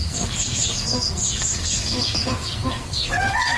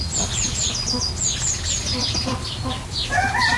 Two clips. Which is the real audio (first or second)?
second